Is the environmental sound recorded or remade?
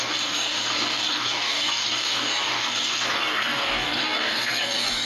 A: remade